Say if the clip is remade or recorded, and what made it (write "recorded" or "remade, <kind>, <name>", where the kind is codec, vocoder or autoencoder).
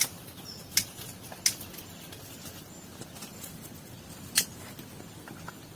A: recorded